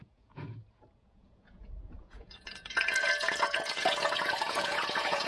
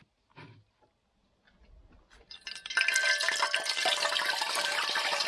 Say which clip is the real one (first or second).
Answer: second